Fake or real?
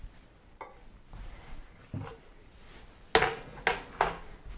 real